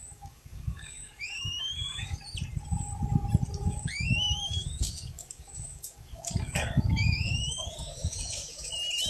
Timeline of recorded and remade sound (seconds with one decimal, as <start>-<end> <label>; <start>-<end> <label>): 0.0-2.2 remade; 2.2-3.6 recorded; 3.6-8.7 remade; 8.7-9.1 recorded